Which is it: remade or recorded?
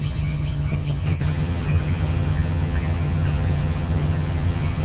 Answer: remade